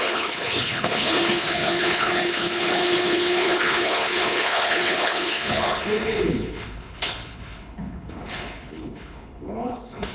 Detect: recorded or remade remade